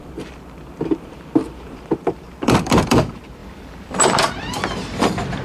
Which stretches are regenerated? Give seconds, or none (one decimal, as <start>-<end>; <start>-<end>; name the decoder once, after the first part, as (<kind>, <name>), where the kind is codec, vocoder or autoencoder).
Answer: 0.0-5.4 (vocoder, BigVGAN v2)